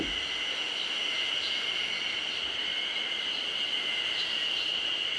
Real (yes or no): no